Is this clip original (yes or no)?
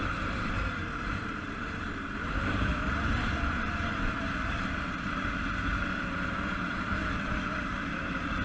no